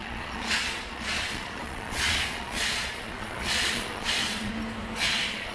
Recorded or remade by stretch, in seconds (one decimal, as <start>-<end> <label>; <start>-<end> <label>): 0.0-4.5 remade; 4.5-5.0 recorded; 5.0-5.5 remade